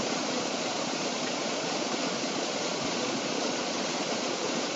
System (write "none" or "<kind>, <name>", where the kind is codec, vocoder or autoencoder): vocoder, Vocos